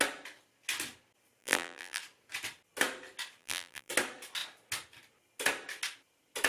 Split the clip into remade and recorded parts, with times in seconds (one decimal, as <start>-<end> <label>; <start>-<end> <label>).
0.0-1.4 recorded; 1.4-2.0 remade; 2.0-3.4 recorded; 3.4-3.9 remade; 3.9-6.5 recorded